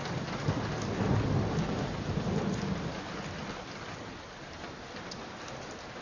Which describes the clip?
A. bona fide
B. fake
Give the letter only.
A